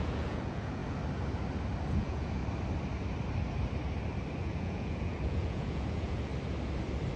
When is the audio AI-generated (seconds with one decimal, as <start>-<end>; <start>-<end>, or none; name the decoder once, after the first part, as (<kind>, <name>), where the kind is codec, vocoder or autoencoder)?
0.0-0.8 (vocoder, Vocos); 1.9-2.4; 4.4-6.3